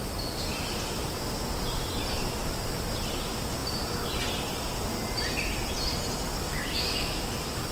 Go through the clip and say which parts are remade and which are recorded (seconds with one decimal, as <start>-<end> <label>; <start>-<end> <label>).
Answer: 0.0-6.3 recorded; 6.3-7.2 remade; 7.2-7.7 recorded